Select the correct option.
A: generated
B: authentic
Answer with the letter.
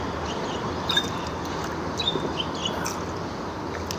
B